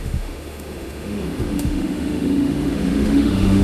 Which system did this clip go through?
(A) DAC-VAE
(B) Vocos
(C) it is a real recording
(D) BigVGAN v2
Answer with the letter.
A